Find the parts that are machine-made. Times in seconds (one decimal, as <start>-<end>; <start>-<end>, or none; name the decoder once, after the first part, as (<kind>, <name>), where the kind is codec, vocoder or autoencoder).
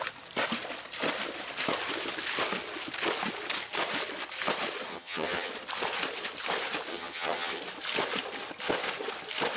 4.9-5.5 (vocoder, HiFi-GAN); 6.9-7.6